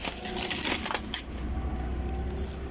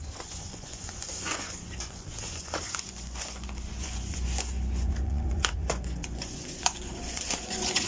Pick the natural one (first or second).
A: first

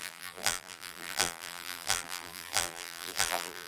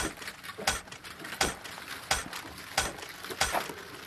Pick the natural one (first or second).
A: second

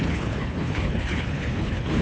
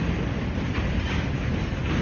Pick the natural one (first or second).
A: second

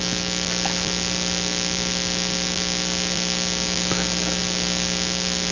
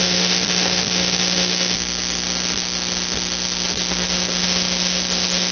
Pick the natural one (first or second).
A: first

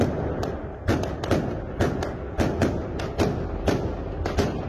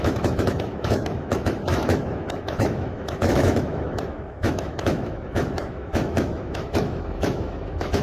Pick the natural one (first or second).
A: first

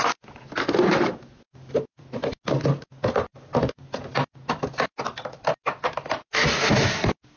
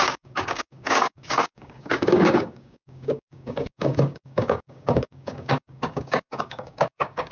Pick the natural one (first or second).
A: first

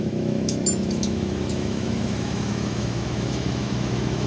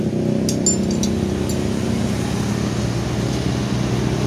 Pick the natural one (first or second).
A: second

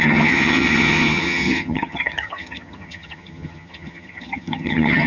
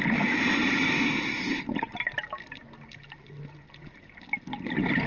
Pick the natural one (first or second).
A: second